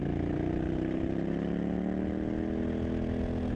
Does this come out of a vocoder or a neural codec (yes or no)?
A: no